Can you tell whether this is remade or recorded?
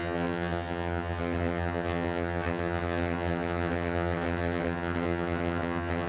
remade